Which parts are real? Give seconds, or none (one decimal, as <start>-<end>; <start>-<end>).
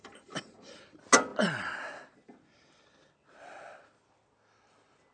0.8-5.1